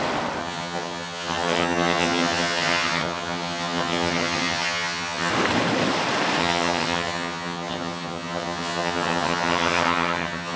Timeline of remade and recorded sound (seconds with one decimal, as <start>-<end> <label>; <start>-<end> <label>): 0.0-0.4 recorded; 0.4-5.3 remade; 5.3-6.4 recorded; 6.4-10.6 remade